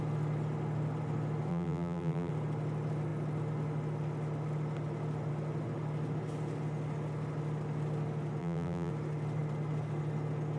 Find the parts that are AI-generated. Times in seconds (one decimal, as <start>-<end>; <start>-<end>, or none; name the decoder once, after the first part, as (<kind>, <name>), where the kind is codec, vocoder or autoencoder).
1.5-2.3 (vocoder, BigVGAN v2); 8.4-8.9

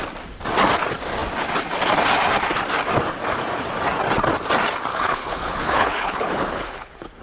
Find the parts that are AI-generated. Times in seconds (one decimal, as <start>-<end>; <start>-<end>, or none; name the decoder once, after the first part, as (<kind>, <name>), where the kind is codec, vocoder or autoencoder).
4.9-7.2 (codec, HILCodec)

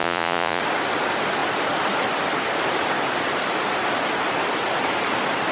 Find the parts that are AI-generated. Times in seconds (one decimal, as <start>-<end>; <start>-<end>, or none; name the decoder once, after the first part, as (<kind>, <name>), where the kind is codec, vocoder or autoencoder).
0.0-0.6 (vocoder, Vocos)

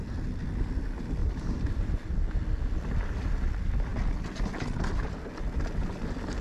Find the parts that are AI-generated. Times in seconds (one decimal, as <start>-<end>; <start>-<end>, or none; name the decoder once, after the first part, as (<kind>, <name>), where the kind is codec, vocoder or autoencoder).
1.2-1.9 (vocoder, BigVGAN v2)

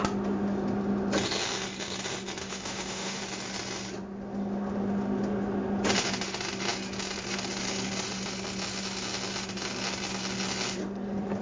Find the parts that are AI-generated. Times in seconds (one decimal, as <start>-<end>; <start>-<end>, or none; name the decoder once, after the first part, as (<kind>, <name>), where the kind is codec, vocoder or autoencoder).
2.4-3.2 (autoencoder, DAC-VAE)